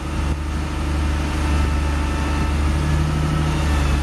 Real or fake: real